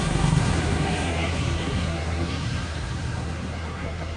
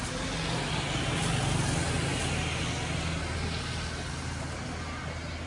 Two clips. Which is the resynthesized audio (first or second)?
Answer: first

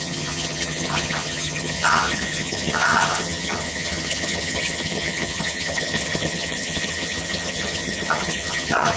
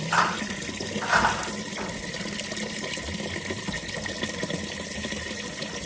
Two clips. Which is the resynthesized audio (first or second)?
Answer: first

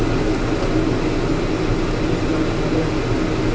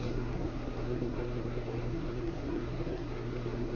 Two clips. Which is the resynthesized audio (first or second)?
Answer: second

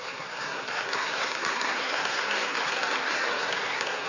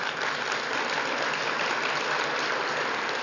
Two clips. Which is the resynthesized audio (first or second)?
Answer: first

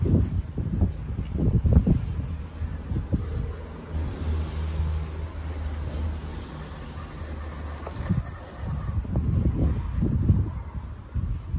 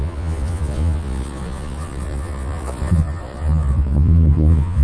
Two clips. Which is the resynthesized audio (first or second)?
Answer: second